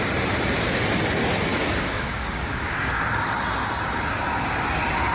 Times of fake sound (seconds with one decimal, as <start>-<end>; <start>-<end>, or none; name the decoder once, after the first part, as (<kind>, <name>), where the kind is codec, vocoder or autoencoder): 1.5-3.0 (codec, DAC)